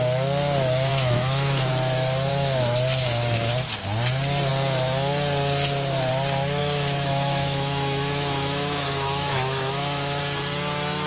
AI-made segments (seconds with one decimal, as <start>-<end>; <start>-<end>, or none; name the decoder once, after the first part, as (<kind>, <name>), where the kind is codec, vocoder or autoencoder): 0.9-1.7 (autoencoder, DAC-VAE); 2.3-3.7; 6.6-10.2